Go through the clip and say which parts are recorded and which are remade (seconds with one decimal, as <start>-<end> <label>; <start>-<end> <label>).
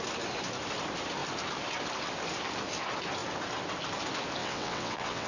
0.0-4.4 recorded; 4.4-5.3 remade